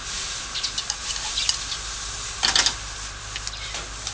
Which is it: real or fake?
real